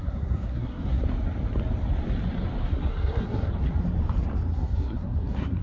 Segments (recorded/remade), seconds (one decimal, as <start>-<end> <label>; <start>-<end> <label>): 0.0-1.0 remade; 1.0-2.6 recorded; 2.6-3.5 remade; 3.5-4.5 recorded; 4.5-5.6 remade